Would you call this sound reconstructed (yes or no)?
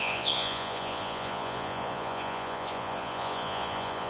yes